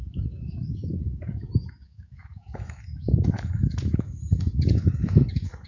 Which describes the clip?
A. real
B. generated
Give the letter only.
B